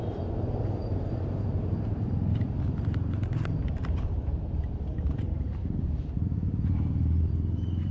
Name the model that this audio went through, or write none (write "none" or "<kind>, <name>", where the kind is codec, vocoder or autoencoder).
vocoder, BigVGAN v2